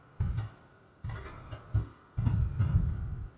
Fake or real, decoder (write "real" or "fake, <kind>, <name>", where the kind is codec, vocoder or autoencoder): real